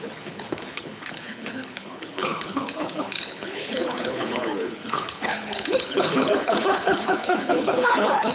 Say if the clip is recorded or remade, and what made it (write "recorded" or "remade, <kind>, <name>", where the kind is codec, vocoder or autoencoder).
remade, codec, HILCodec